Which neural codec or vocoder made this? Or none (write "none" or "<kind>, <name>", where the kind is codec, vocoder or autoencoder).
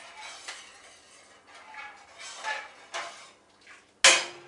none